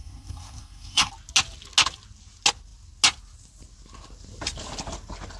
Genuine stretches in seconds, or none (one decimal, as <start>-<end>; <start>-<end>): 1.1-5.4